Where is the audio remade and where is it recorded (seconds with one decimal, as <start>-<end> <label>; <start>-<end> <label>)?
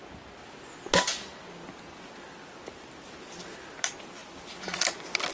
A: 0.0-5.3 recorded